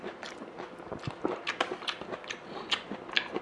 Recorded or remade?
recorded